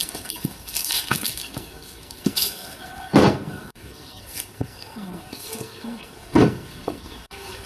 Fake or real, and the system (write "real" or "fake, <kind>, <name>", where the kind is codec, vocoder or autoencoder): fake, codec, SNAC